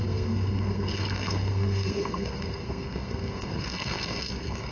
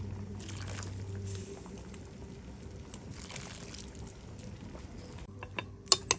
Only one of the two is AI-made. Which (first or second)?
first